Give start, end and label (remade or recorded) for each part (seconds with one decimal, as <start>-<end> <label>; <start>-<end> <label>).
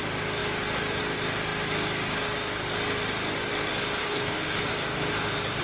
0.0-4.0 recorded; 4.0-4.6 remade; 4.6-5.6 recorded